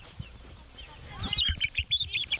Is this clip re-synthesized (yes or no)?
yes